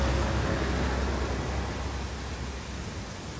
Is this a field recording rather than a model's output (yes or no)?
yes